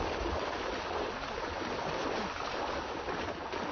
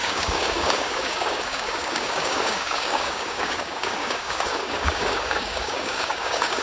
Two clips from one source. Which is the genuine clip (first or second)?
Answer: first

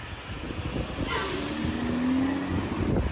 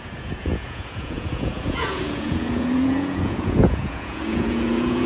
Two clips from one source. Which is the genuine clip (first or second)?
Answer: first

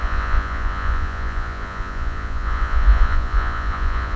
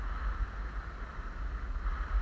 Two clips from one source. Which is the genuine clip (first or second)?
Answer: second